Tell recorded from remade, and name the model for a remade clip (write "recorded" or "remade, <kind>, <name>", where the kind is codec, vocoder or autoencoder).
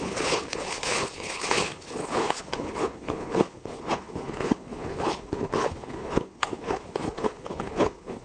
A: remade, codec, HILCodec